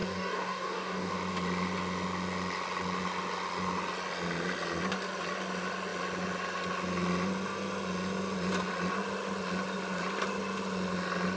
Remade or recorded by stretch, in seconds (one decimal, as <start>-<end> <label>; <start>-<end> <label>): 0.0-1.1 remade; 1.1-11.4 recorded

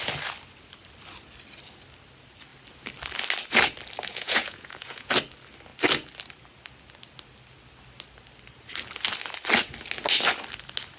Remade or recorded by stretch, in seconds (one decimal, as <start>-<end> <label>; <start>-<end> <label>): 0.0-4.1 recorded; 4.1-5.1 remade; 5.1-11.0 recorded

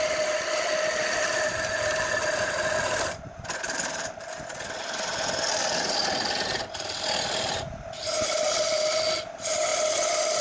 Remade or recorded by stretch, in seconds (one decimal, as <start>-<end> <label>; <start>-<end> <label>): 0.0-10.4 recorded

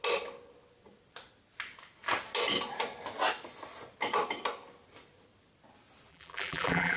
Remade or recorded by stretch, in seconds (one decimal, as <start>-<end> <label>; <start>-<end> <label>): 0.0-6.1 recorded; 6.1-7.0 remade